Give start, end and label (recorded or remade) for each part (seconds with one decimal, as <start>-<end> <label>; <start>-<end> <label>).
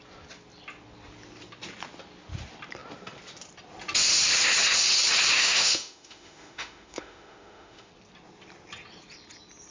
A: 0.0-5.3 recorded; 5.3-7.9 remade; 7.9-9.7 recorded